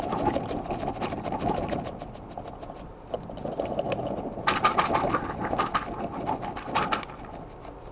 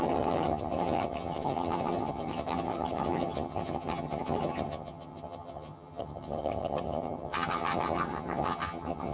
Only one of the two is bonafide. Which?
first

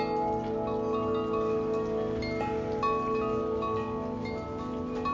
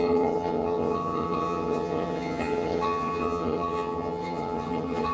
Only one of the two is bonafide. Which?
first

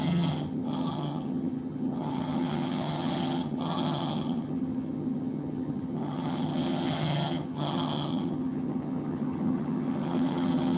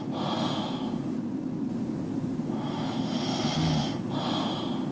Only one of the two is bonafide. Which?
second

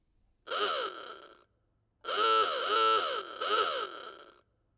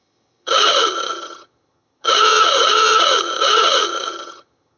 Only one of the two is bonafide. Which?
first